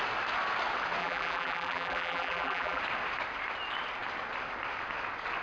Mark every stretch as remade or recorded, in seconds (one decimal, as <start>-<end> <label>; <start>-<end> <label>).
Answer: 0.0-1.0 recorded; 1.0-2.8 remade; 2.8-5.4 recorded